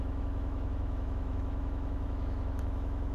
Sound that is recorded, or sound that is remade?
remade